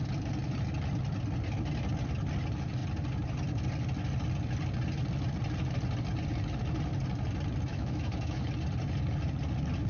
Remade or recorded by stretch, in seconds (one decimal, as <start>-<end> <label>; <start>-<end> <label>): 0.0-7.7 recorded; 7.7-8.5 remade; 8.5-9.9 recorded